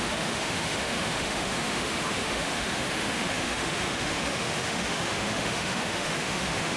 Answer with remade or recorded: remade